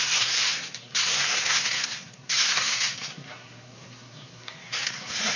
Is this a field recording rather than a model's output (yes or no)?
no